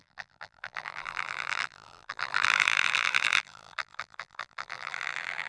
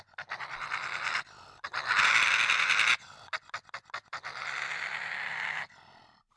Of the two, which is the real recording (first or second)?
second